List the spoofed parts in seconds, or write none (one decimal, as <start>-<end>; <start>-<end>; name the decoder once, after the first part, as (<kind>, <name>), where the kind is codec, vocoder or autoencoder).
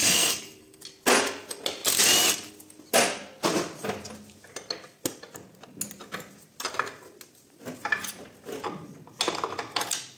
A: 0.0-0.8 (codec, SNAC)